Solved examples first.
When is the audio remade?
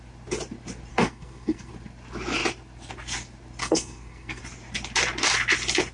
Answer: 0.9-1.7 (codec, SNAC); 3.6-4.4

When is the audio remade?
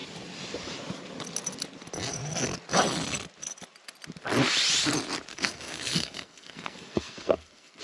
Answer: 5.3-7.8 (codec, SNAC)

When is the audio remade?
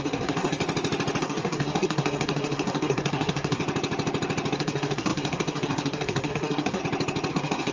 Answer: 0.0-0.6 (codec, SNAC); 1.2-3.6; 4.5-6.8; 7.3-7.7